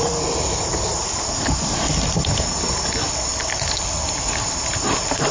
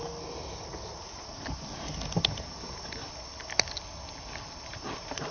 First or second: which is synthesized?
first